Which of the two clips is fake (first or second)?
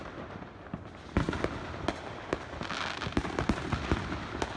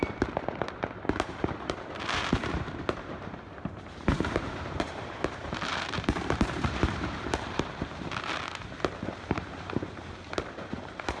second